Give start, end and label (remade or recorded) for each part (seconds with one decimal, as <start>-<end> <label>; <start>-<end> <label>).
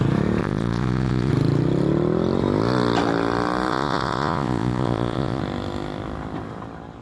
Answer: 0.0-0.4 recorded; 0.4-1.3 remade; 1.3-3.7 recorded; 3.7-5.4 remade; 5.4-7.0 recorded